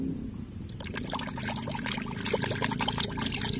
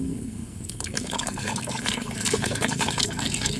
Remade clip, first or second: second